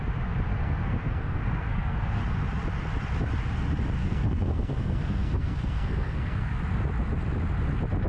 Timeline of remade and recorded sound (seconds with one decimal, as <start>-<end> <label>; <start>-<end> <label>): 0.0-0.5 recorded; 0.5-2.2 remade; 2.2-4.0 recorded; 4.0-6.5 remade; 6.5-8.1 recorded